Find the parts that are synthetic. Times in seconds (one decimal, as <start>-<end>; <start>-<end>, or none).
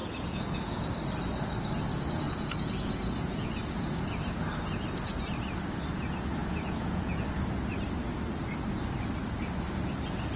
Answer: 0.0-0.9; 1.9-3.5; 6.4-7.1